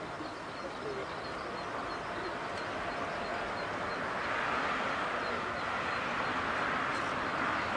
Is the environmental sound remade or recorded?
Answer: recorded